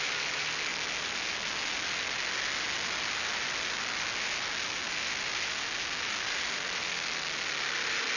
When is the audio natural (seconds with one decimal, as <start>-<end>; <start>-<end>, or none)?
0.0-8.2